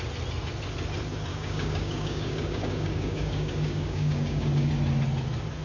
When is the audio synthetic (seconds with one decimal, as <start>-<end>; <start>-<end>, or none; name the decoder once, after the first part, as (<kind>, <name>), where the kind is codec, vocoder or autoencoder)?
1.3-4.7 (codec, DAC)